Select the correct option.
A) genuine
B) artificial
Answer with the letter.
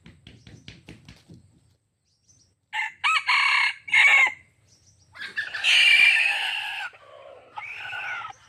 A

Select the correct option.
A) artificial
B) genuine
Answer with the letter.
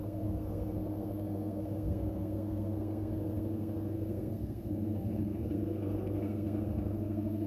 A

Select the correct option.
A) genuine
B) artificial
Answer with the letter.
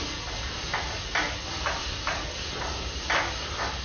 A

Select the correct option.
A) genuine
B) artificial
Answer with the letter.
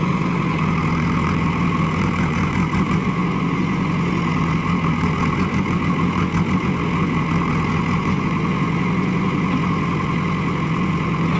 B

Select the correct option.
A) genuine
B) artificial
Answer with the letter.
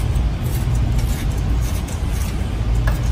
A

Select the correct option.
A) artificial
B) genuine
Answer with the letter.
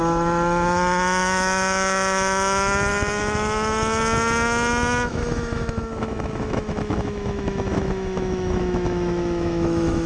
A